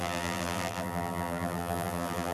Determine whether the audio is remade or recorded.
remade